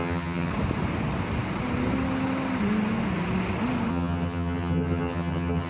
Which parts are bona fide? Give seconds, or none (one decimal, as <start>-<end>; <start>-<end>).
0.5-3.9